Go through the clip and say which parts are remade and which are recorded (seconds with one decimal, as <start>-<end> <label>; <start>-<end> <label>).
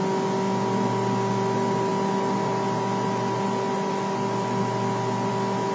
0.0-5.7 recorded